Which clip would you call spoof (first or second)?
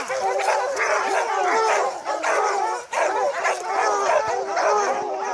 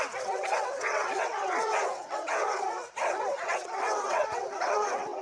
second